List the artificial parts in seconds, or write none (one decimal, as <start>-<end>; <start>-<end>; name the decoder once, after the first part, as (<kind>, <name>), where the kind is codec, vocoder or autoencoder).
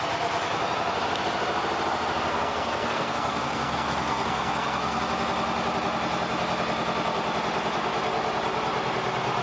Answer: 2.3-5.0 (codec, SNAC)